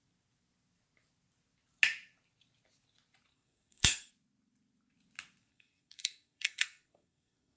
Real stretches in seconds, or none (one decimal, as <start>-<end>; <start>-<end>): 0.0-3.3; 4.1-5.5